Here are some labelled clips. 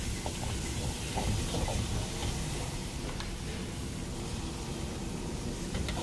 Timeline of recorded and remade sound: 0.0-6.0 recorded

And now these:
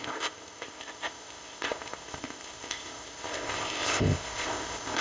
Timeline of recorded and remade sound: 0.0-5.0 remade